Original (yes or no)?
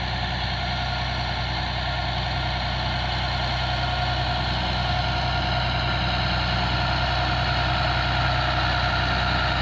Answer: yes